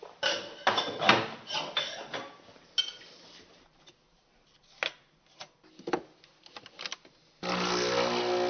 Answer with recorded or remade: recorded